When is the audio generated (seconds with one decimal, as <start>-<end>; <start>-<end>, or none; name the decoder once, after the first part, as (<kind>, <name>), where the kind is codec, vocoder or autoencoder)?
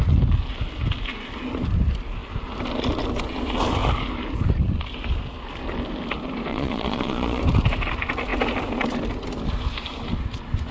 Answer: 6.5-7.4 (vocoder, Vocos)